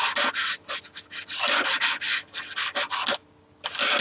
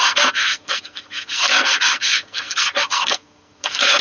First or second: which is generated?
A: second